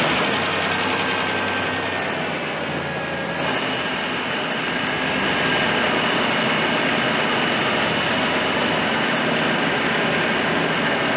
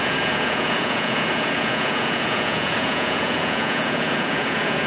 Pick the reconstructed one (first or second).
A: second